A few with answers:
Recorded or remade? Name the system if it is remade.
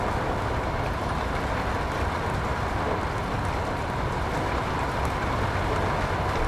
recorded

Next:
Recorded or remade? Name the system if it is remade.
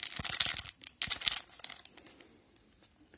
recorded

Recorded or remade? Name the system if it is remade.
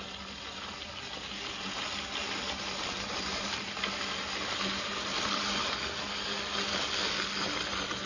recorded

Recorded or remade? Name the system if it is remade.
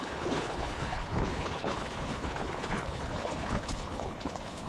remade, codec, HILCodec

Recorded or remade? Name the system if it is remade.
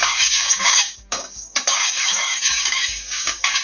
remade, codec, DAC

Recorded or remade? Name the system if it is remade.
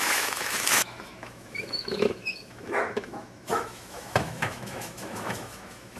remade, autoencoder, DAC-VAE